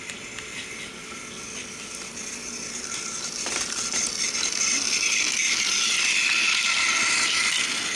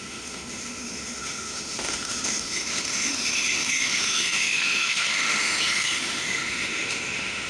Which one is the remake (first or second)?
second